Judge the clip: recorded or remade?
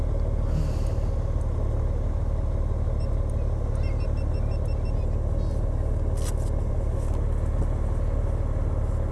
recorded